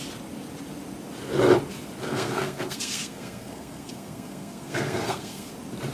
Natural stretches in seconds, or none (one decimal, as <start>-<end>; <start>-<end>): 0.0-2.0; 5.5-5.9